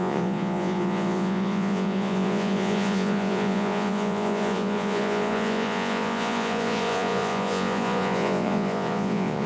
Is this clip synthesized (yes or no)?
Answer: yes